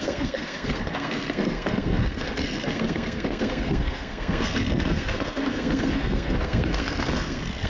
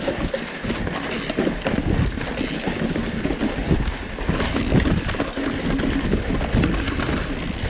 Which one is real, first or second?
second